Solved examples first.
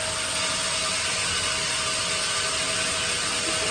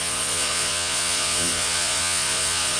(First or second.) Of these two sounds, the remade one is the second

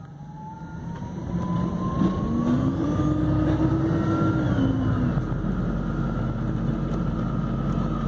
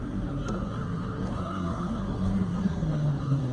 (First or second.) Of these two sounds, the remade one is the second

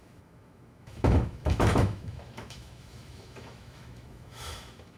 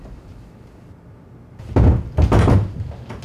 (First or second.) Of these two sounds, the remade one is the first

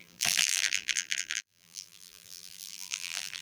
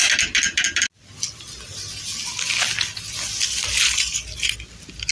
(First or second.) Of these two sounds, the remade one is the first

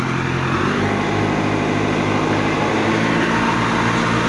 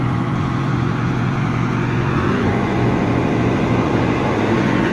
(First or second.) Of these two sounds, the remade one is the second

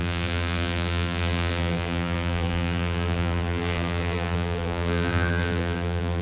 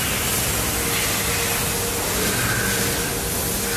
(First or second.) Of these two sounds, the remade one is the first